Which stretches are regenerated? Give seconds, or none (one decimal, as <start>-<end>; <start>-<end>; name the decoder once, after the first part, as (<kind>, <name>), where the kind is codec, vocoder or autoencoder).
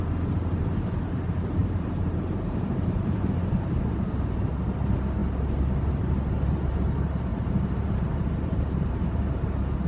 1.6-4.5 (vocoder, BigVGAN v2); 7.3-9.4